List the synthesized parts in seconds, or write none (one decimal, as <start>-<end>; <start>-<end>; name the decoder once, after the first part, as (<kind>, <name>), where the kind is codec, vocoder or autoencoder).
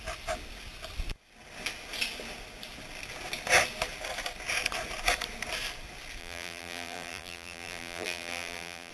6.2-8.9 (vocoder, BigVGAN v2)